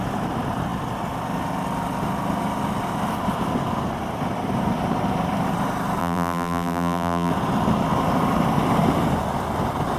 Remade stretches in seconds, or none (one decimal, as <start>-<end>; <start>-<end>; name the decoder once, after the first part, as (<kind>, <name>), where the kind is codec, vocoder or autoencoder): 6.0-7.3 (vocoder, BigVGAN v2)